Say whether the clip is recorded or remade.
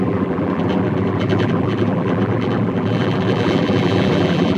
remade